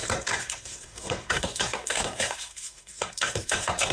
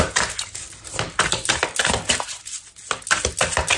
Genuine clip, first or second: second